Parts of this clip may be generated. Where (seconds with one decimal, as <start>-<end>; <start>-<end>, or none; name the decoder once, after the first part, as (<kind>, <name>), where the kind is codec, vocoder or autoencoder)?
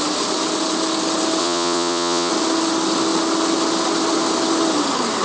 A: 1.4-2.3 (vocoder, WaveNeXt)